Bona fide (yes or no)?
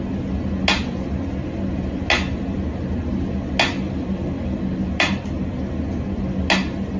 yes